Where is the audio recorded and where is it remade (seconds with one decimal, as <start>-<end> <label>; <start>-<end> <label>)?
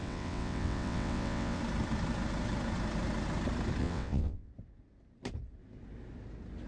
0.0-1.6 remade; 1.6-3.8 recorded; 3.8-4.5 remade; 4.5-6.7 recorded